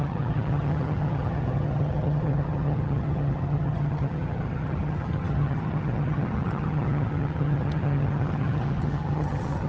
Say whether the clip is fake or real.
fake